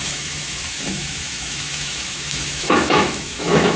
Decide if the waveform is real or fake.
fake